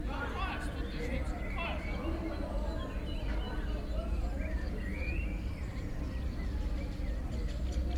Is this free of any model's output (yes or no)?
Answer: yes